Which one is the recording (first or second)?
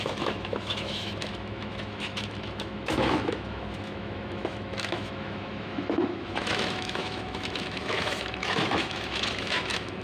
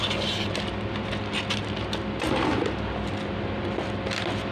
second